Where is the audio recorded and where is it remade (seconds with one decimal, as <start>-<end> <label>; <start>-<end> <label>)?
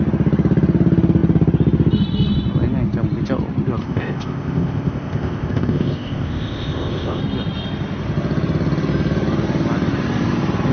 0.0-3.8 recorded; 3.8-7.2 remade; 7.2-10.7 recorded